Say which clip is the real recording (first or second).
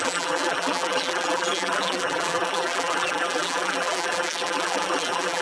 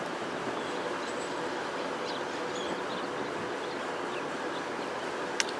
second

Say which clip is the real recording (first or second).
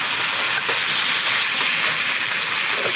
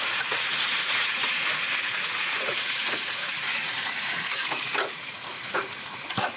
first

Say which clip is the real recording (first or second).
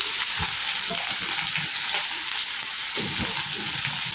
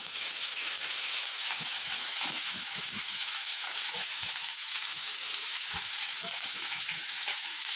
first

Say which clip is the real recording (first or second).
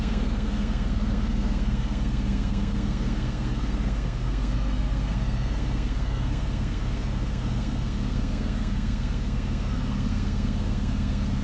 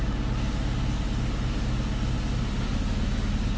second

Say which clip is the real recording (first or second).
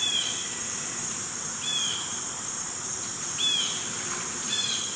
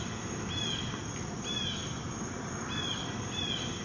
second